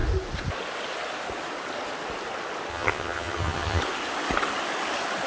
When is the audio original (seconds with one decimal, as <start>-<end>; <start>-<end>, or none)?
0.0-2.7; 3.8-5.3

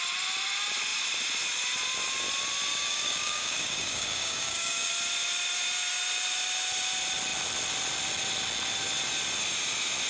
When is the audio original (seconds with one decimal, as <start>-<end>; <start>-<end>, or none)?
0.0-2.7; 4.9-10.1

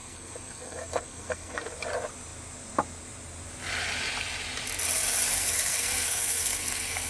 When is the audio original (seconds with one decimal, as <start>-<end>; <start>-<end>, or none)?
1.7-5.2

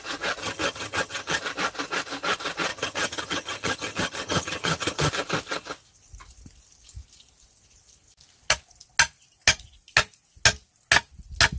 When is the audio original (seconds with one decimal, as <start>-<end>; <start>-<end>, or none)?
0.0-0.4; 1.4-2.7; 5.1-11.6

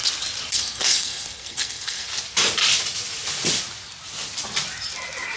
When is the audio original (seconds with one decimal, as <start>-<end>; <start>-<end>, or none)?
0.0-0.5; 2.1-5.4

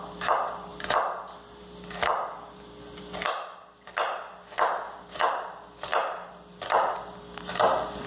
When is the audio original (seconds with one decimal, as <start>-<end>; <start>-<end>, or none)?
0.0-8.1